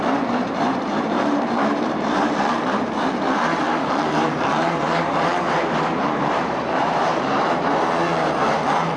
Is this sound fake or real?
fake